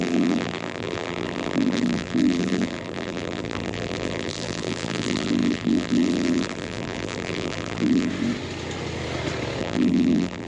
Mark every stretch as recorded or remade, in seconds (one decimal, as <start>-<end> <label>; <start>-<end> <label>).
0.0-8.1 remade; 8.1-9.6 recorded; 9.6-10.5 remade

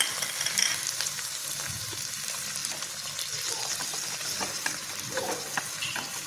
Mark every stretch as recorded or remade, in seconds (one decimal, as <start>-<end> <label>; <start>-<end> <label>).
0.0-6.3 recorded

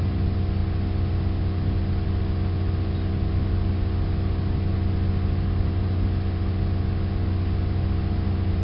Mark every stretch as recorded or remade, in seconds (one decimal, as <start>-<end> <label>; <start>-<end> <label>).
0.0-8.6 recorded

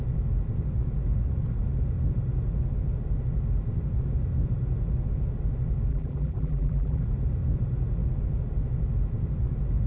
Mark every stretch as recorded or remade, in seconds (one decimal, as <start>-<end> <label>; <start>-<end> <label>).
0.0-5.9 recorded; 5.9-7.0 remade; 7.0-9.9 recorded

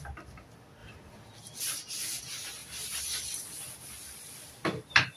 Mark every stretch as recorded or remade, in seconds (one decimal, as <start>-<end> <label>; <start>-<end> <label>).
0.0-0.8 recorded; 0.8-1.6 remade; 1.6-2.6 recorded; 2.6-4.6 remade; 4.6-5.2 recorded